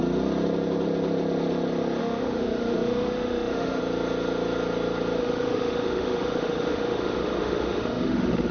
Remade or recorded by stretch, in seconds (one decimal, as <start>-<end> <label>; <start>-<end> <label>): 0.0-2.0 recorded; 2.0-3.8 remade; 3.8-5.2 recorded; 5.2-8.5 remade